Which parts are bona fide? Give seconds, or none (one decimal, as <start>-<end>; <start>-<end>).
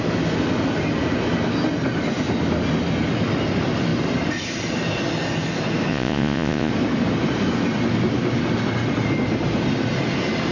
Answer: 0.0-5.9; 6.7-10.5